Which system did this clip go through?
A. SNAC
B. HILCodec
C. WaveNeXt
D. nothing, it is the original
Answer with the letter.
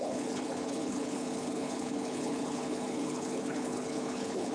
B